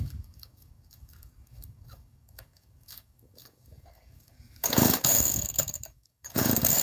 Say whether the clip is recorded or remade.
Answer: remade